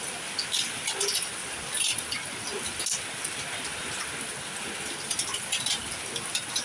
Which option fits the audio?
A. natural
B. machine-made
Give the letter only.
A